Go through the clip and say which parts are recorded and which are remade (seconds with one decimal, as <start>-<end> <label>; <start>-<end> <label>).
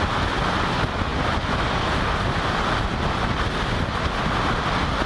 0.0-5.1 recorded